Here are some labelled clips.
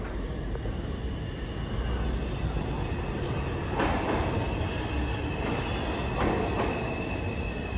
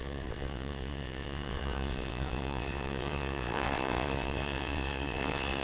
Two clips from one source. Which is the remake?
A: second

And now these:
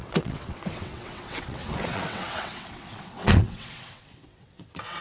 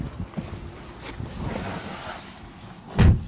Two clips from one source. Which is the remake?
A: first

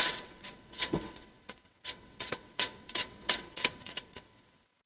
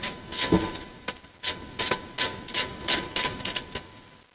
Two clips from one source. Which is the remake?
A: first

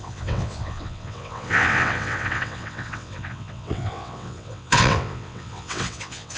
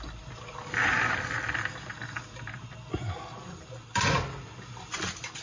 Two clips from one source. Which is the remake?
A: first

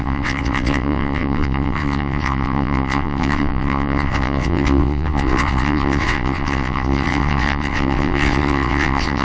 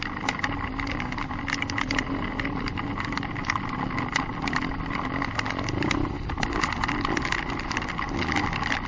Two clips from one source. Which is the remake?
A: first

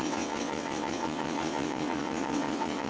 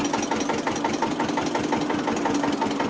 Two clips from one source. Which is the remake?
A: first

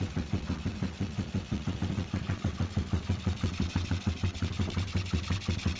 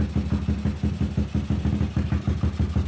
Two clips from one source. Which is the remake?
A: first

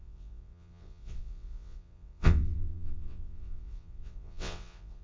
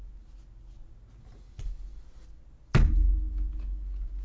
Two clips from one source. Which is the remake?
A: first